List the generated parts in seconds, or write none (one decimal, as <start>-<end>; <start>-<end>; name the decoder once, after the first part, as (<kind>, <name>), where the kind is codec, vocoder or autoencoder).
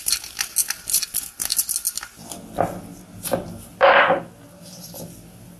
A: none